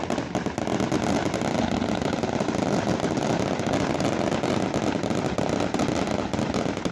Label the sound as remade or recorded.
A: recorded